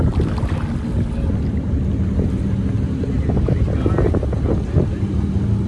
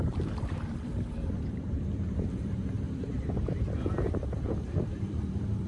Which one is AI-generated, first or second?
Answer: second